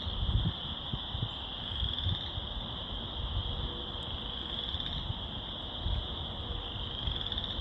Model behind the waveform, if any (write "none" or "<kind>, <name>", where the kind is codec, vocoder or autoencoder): none